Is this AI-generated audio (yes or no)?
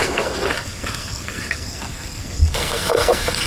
yes